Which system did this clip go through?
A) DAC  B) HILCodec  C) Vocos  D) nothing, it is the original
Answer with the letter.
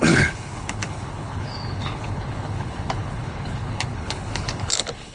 B